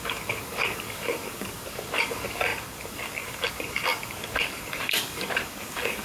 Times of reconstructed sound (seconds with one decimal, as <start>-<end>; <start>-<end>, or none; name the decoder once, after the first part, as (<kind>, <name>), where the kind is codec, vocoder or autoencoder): 0.0-6.0 (codec, DAC)